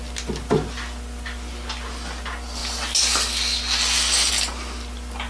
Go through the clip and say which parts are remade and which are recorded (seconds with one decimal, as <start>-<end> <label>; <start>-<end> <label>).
0.0-5.3 recorded

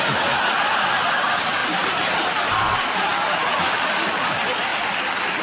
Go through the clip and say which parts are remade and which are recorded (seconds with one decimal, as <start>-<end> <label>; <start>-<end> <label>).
0.0-1.6 recorded; 1.6-2.4 remade; 2.4-5.4 recorded

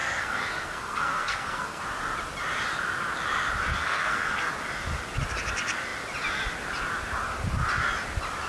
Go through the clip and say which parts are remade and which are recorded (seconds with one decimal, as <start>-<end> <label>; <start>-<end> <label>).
0.0-1.8 remade; 1.8-3.8 recorded; 3.8-4.5 remade; 4.5-8.5 recorded

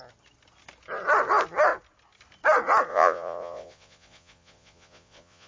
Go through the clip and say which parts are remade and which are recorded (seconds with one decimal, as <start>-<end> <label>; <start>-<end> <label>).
0.0-2.9 recorded; 2.9-5.5 remade

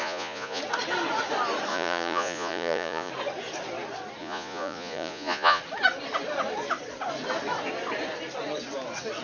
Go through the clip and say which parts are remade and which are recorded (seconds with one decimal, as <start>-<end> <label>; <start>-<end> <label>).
0.0-0.6 remade; 0.6-1.7 recorded; 1.7-3.1 remade; 3.1-4.2 recorded; 4.2-5.6 remade; 5.6-9.2 recorded

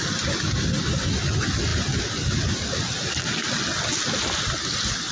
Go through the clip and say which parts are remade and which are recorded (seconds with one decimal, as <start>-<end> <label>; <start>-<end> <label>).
0.0-5.1 recorded

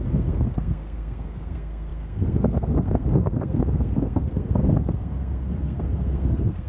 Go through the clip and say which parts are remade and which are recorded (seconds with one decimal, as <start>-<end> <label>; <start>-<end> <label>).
0.0-6.7 remade